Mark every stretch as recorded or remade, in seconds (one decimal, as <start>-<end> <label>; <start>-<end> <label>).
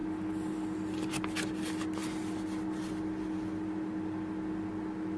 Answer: 0.0-1.1 remade; 1.1-2.0 recorded; 2.0-5.2 remade